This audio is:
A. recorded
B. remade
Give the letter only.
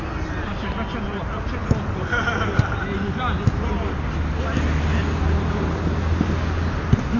A